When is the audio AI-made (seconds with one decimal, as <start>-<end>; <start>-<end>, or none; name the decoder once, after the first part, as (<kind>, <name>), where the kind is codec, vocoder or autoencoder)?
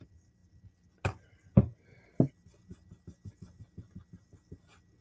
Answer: none